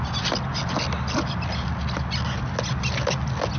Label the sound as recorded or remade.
recorded